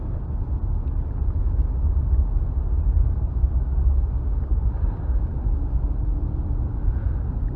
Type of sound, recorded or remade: recorded